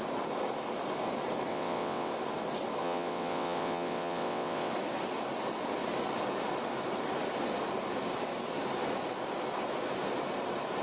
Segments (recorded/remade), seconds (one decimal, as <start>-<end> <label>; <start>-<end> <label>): 0.0-1.5 recorded; 1.5-2.1 remade; 2.1-2.8 recorded; 2.8-4.7 remade; 4.7-10.8 recorded